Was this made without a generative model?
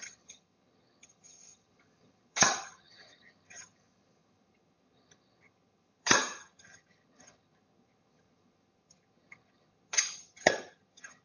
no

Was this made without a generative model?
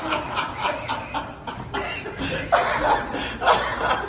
yes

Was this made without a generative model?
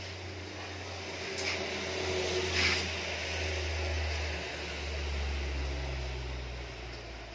yes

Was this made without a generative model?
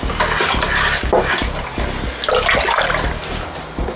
yes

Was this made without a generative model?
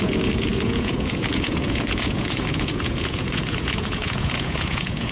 no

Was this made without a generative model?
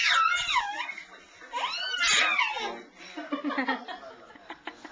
yes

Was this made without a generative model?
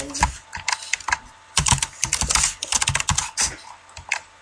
yes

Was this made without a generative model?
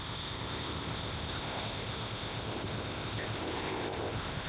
no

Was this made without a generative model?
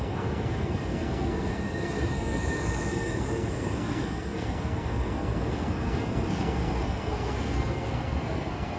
no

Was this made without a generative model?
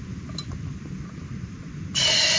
yes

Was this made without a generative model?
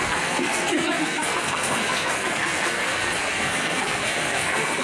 no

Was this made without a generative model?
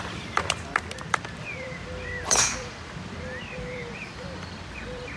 no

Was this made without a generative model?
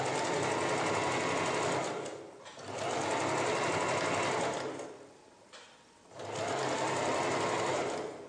yes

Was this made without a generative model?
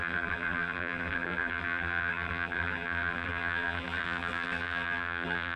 no